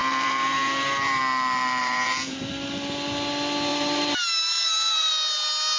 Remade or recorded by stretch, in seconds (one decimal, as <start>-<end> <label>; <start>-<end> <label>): 0.0-1.2 remade; 1.2-1.8 recorded; 1.8-2.5 remade; 2.5-3.7 recorded; 3.7-5.1 remade; 5.1-5.8 recorded